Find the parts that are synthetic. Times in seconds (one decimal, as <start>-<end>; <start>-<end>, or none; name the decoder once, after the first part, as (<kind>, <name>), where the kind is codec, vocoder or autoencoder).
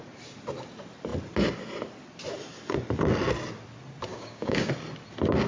4.1-4.7 (codec, DAC)